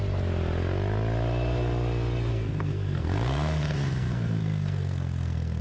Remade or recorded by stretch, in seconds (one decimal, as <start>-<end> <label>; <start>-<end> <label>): 0.0-2.3 recorded; 2.3-5.6 remade